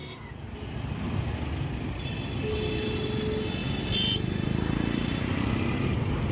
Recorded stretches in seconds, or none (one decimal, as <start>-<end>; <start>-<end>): 0.0-6.3

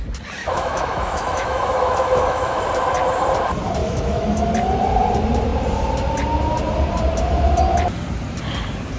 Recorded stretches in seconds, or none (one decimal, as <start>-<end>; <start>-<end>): 0.0-0.4; 2.6-3.8; 4.5-9.0

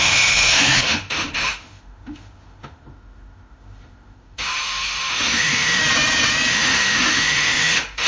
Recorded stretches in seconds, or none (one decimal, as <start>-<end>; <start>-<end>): 5.8-6.5

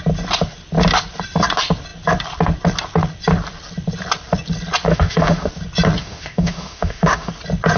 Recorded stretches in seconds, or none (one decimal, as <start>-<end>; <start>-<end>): 0.0-4.9; 5.5-6.0; 7.3-7.8

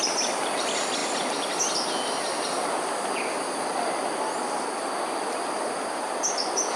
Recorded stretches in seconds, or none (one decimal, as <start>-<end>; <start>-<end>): 0.0-6.8